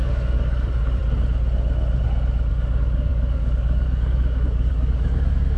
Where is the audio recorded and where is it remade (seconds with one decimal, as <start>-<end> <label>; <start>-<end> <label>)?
0.0-1.0 remade; 1.0-2.5 recorded; 2.5-5.6 remade